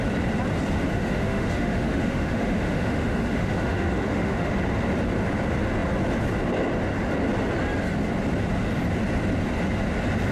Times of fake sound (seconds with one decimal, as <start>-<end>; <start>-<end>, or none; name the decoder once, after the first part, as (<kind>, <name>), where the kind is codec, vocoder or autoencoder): 0.9-4.5 (autoencoder, DAC-VAE)

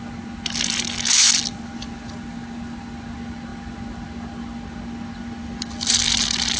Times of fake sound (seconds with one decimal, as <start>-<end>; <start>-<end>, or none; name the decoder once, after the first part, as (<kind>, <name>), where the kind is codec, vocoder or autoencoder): none

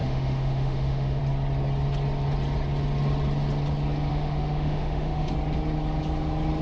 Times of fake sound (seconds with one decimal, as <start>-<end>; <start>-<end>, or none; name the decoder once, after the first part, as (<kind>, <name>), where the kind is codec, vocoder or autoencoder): 0.0-1.2 (autoencoder, DAC-VAE); 4.1-5.3

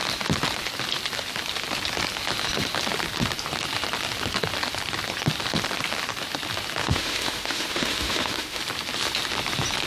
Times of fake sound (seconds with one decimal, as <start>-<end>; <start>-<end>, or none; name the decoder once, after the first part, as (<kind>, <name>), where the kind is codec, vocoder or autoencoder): 6.8-8.6 (autoencoder, DAC-VAE)

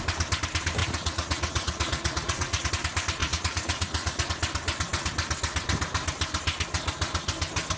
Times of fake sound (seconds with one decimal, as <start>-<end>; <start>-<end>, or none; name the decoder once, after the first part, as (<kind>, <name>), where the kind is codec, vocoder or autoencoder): 0.8-2.7 (vocoder, Vocos); 3.2-4.3